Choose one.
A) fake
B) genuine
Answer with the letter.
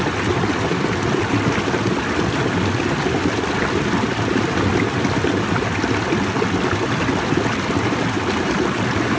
B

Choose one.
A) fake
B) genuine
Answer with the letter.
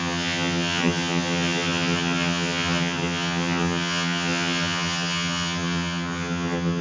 A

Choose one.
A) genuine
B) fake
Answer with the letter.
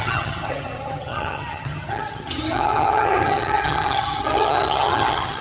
B